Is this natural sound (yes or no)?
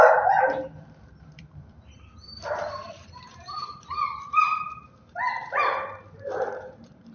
no